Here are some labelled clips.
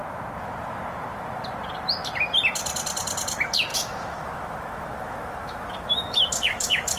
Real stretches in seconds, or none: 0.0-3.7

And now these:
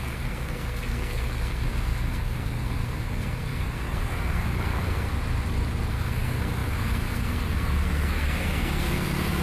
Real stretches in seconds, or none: 5.1-5.9

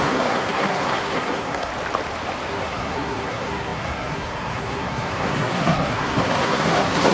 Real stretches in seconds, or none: 1.7-2.5

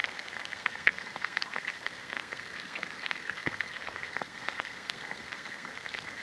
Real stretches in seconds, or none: none

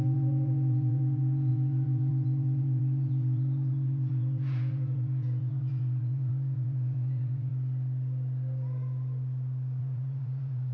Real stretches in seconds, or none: 7.5-9.8

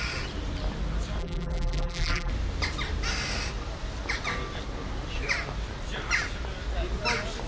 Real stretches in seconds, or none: 0.0-1.2; 2.3-7.5